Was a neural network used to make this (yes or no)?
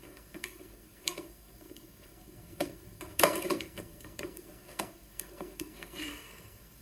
yes